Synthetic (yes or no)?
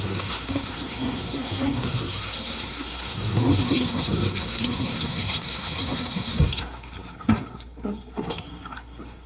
yes